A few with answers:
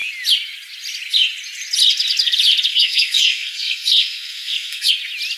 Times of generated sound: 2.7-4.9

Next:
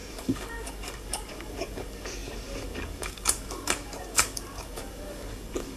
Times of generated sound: 0.0-5.8

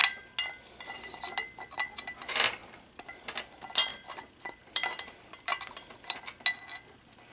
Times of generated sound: 2.6-3.2; 3.9-6.2